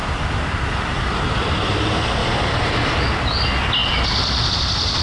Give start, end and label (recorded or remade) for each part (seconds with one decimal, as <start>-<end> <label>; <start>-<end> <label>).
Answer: 0.0-1.1 remade; 1.1-2.2 recorded; 2.2-3.0 remade; 3.0-5.0 recorded